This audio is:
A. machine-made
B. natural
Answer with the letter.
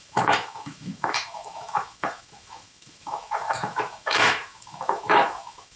A